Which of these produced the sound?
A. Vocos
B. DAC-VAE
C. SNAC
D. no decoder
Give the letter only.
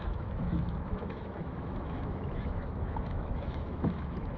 B